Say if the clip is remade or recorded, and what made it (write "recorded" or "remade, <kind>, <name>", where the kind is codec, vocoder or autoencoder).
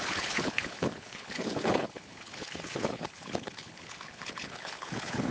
remade, codec, HILCodec